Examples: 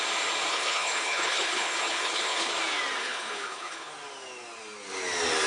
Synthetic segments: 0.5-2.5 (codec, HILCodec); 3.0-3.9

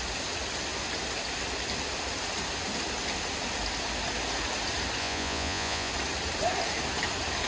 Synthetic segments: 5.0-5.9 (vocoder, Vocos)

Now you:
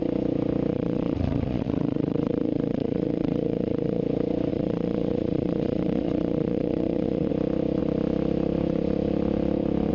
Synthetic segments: 0.7-4.0 (vocoder, Vocos); 4.5-7.3

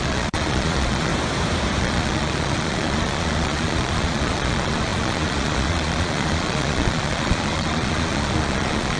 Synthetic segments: 0.0-1.1 (vocoder, Vocos); 1.8-9.0

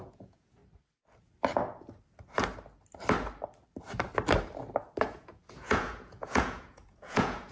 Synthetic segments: 0.0-0.6 (vocoder, Vocos); 5.1-7.5

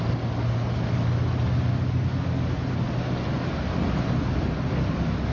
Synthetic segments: none

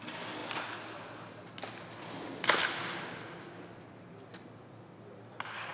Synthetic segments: none